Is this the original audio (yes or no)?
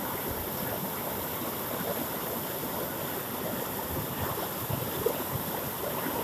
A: yes